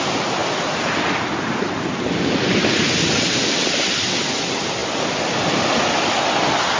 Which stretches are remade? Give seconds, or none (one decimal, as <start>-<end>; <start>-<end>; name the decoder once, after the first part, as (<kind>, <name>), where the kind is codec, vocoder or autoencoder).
none